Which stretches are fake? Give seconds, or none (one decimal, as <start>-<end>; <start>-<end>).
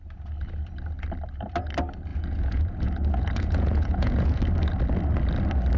2.1-4.4